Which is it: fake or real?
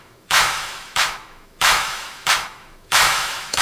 fake